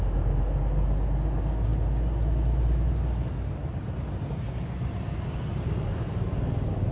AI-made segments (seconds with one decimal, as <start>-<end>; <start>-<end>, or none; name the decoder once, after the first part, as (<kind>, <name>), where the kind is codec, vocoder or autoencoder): none